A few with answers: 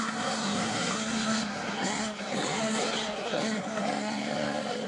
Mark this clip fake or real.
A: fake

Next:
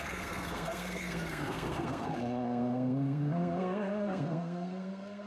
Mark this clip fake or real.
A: fake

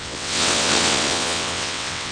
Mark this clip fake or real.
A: fake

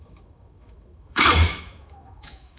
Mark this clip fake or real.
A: fake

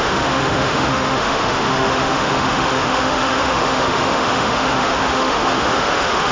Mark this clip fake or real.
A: fake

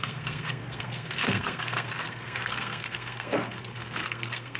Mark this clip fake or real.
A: fake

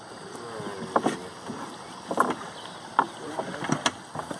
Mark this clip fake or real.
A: real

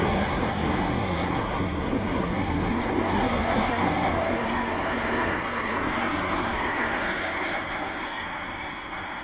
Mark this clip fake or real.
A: fake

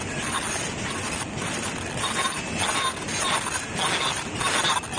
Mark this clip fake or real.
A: real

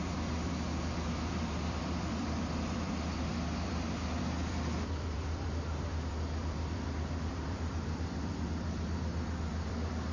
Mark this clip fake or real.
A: fake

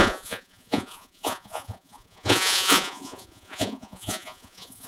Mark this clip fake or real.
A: fake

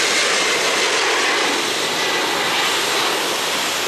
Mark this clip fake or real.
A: real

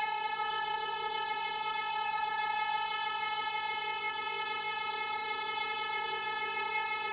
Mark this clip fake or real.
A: fake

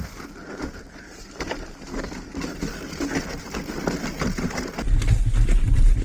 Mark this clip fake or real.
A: real